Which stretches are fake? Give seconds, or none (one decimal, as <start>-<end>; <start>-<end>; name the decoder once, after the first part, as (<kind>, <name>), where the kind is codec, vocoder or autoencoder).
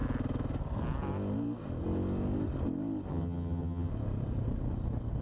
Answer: 3.1-3.9 (vocoder, HiFi-GAN)